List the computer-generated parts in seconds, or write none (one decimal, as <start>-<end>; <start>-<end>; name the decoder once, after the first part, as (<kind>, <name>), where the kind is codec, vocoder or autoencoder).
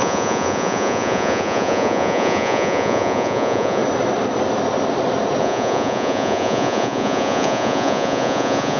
0.0-3.8 (vocoder, Vocos); 5.4-8.8